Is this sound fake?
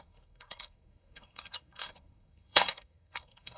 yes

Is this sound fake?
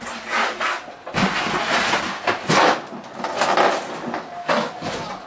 no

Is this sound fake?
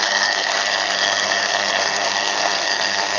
yes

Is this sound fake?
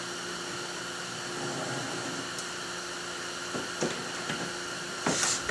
no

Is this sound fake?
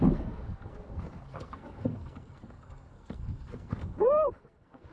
yes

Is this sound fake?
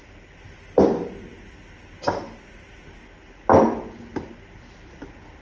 no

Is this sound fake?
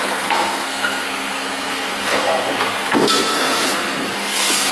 yes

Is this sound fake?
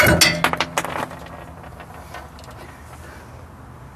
no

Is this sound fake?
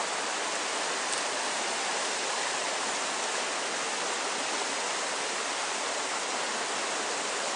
no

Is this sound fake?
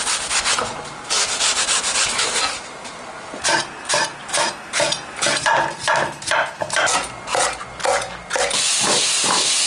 no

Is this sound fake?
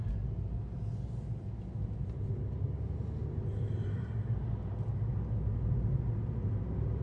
no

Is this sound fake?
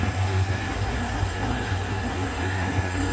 yes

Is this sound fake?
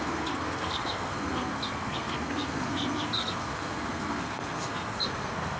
yes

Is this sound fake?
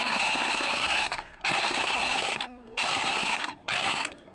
yes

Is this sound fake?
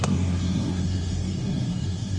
yes